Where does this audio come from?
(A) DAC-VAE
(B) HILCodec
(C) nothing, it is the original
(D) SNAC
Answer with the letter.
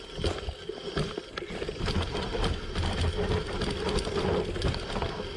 C